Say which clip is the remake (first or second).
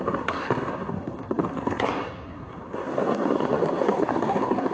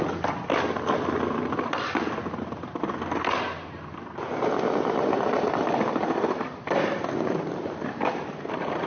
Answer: first